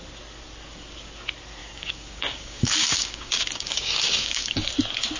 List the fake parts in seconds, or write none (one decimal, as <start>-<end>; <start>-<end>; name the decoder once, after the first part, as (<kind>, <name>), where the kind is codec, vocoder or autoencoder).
1.6-4.7 (codec, DAC)